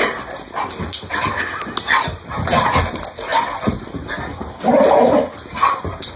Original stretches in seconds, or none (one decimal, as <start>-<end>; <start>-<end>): 0.0-6.2